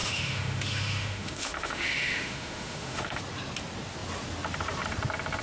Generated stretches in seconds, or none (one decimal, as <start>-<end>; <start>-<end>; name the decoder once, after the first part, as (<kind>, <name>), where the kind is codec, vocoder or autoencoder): 0.0-3.2 (autoencoder, DAC-VAE)